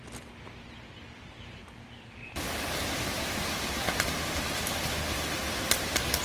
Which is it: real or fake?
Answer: real